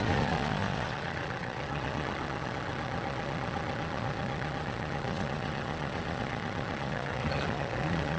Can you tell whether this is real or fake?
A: fake